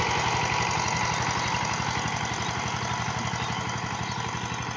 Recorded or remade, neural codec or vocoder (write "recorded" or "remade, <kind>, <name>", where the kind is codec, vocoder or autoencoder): recorded